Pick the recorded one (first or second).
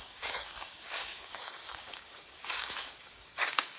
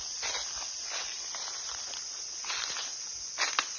second